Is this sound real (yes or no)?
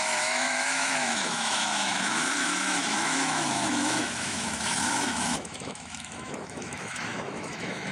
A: no